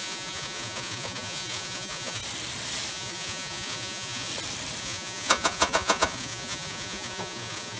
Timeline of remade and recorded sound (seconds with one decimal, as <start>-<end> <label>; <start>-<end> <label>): 0.0-2.2 remade; 2.2-2.9 recorded; 2.9-4.3 remade; 4.3-4.8 recorded; 4.8-7.8 remade